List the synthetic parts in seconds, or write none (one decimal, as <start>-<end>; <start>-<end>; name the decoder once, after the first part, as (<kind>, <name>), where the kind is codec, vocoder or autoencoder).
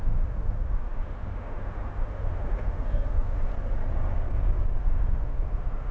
0.0-3.5 (autoencoder, DAC-VAE); 4.8-5.9